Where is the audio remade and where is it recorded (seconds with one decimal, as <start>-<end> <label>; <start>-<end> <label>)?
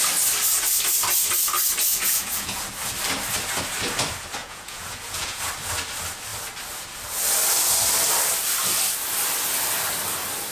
0.0-1.9 recorded; 1.9-2.6 remade; 2.6-4.4 recorded; 4.4-5.5 remade; 5.5-10.5 recorded